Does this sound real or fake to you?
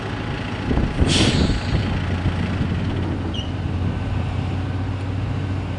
real